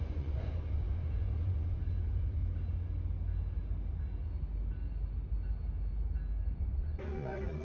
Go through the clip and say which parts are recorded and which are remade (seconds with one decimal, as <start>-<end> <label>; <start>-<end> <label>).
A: 0.0-2.4 remade; 2.4-6.6 recorded; 6.6-7.6 remade